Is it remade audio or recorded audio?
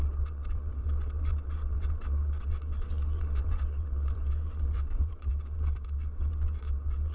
remade